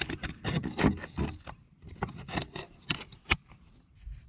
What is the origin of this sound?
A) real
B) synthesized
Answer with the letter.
A